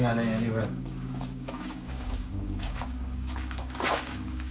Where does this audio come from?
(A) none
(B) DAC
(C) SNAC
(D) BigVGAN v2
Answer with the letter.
B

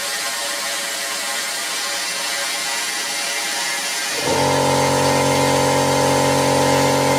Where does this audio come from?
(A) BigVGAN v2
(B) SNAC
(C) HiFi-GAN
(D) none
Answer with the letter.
D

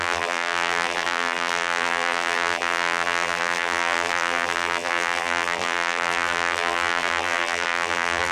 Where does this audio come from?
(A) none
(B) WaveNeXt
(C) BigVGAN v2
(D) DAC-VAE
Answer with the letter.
C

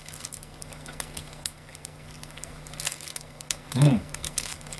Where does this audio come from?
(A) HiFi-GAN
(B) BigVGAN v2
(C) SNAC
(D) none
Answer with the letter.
C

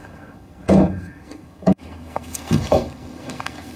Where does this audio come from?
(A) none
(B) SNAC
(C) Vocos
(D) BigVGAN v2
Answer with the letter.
B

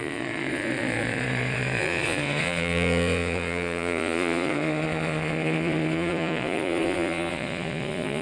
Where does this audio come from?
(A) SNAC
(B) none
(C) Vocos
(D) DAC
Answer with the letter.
C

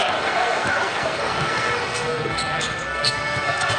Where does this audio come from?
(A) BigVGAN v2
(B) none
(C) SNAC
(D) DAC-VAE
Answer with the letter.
C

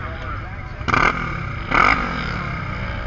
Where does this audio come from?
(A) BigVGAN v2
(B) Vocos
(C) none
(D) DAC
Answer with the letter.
C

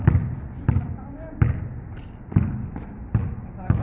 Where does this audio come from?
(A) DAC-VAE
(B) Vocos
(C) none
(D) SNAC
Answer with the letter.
C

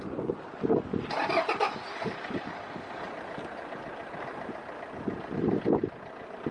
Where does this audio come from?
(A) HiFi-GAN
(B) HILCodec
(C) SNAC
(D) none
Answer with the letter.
D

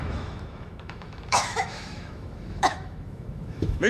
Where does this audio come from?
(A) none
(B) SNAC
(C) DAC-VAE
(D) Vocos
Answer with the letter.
C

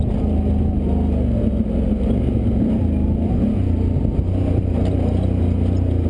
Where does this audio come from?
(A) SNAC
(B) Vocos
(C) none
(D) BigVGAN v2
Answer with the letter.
C